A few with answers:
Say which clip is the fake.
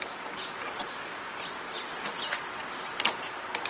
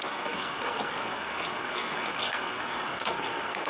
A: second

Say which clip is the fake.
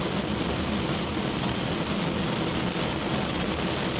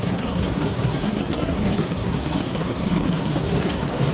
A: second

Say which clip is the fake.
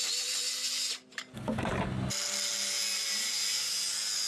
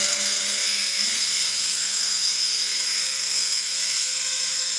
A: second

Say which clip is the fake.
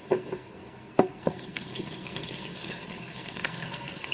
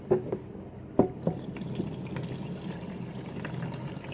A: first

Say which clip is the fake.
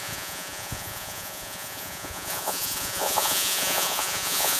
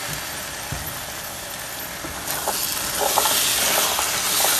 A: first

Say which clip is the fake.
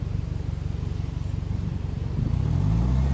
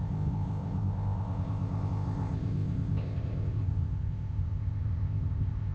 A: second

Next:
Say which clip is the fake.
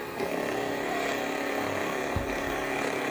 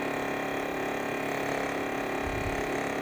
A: first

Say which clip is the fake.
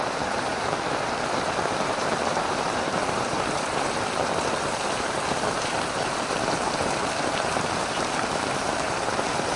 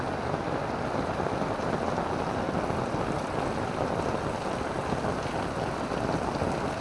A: first